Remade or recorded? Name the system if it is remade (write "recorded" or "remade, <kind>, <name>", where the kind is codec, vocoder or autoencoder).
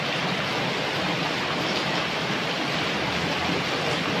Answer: recorded